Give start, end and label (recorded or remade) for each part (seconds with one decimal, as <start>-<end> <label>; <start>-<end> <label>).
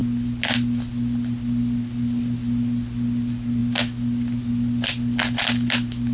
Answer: 0.0-6.1 recorded